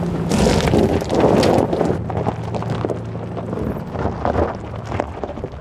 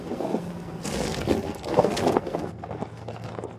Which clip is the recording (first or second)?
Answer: first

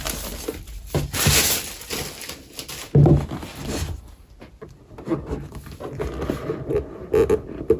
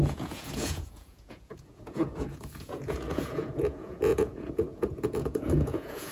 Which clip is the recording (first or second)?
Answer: first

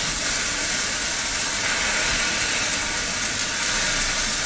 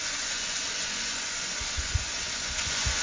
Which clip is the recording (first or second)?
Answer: first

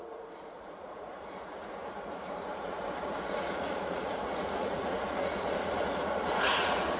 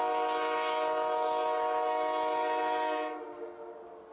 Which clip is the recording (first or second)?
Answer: second